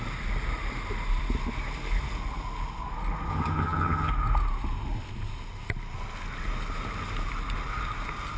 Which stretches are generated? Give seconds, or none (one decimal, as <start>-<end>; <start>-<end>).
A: 3.3-4.1